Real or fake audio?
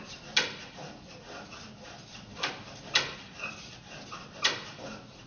real